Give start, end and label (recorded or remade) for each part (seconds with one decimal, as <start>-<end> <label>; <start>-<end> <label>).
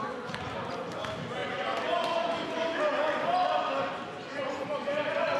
0.0-5.4 recorded